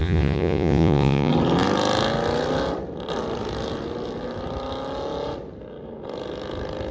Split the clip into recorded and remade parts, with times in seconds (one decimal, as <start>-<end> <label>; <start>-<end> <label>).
0.0-1.3 remade; 1.3-6.9 recorded